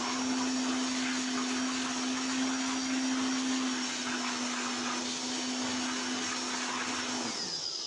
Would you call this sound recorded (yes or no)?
yes